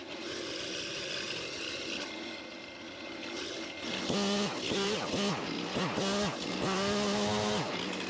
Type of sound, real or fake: real